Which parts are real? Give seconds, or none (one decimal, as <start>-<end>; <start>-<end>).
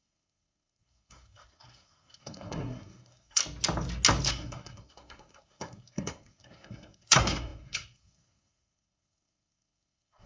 3.4-4.3